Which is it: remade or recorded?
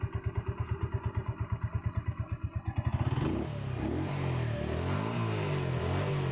recorded